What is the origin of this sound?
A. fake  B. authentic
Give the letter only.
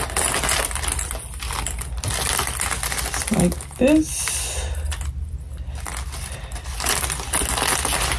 B